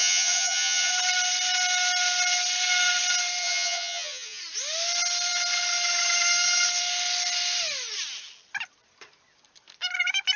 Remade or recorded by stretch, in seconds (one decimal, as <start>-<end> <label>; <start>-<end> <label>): 0.0-0.9 remade; 0.9-3.4 recorded; 3.4-4.4 remade; 4.4-10.4 recorded